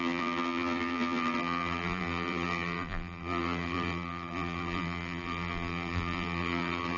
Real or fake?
fake